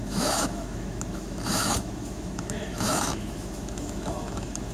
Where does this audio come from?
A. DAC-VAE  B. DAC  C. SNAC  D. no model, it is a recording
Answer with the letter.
A